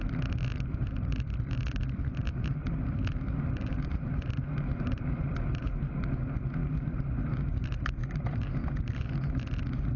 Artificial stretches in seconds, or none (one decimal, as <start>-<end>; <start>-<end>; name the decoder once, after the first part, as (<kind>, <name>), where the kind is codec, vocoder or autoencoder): 0.8-5.7 (vocoder, BigVGAN v2); 6.6-7.6